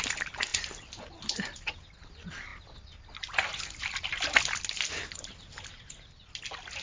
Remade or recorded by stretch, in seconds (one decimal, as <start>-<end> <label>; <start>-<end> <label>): 0.0-6.8 recorded